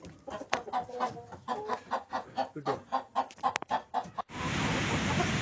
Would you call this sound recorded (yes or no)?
yes